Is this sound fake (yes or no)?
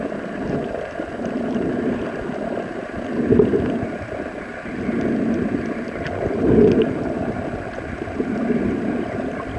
no